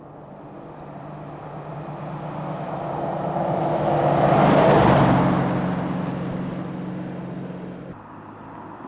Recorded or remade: recorded